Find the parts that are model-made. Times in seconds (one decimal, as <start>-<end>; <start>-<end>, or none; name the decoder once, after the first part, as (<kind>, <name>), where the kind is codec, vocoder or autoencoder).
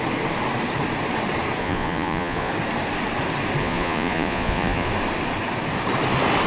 1.6-2.5 (vocoder, Vocos); 3.6-4.9